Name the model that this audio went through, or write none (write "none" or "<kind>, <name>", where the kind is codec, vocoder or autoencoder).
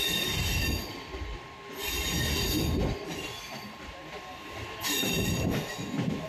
none